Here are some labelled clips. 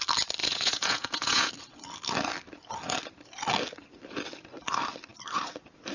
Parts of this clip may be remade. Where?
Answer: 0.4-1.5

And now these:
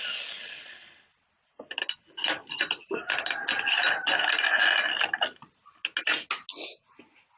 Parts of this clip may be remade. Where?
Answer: none

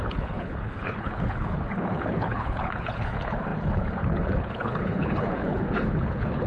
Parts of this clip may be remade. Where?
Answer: 0.0-6.5

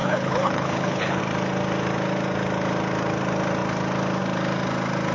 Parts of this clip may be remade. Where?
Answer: 0.0-1.2

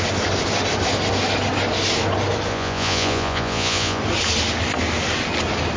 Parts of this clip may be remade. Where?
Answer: 2.5-4.0

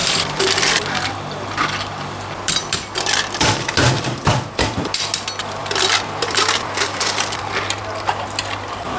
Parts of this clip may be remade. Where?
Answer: 0.0-5.1; 5.6-7.8